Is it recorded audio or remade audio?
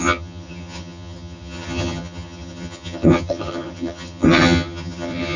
remade